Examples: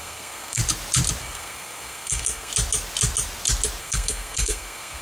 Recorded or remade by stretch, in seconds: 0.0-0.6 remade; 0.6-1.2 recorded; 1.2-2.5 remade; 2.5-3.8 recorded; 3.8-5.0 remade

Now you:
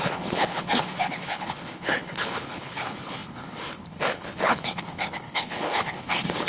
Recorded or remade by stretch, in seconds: 0.0-6.5 remade

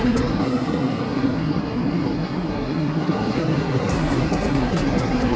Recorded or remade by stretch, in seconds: 0.0-5.4 remade

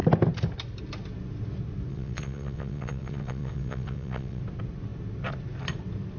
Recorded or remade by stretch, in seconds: 0.0-1.9 recorded; 1.9-4.4 remade; 4.4-6.2 recorded

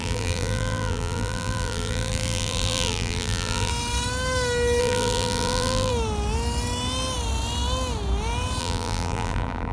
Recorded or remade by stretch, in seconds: 0.0-3.7 remade; 3.7-4.8 recorded; 4.8-5.9 remade; 5.9-8.6 recorded; 8.6-9.7 remade